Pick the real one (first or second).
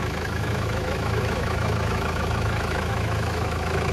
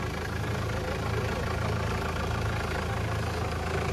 second